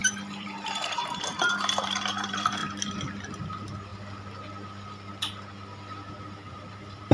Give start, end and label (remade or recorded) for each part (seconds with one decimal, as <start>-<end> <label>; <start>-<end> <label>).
0.0-2.6 remade; 2.6-3.4 recorded; 3.4-3.9 remade; 3.9-6.5 recorded; 6.5-7.1 remade